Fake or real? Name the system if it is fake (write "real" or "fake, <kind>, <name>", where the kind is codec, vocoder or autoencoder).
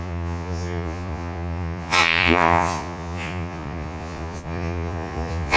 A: fake, vocoder, Vocos